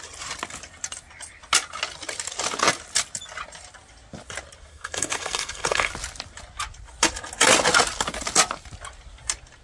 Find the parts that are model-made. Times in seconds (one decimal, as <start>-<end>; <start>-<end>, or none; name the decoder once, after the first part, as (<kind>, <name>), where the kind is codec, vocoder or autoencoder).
4.7-5.9 (codec, SNAC)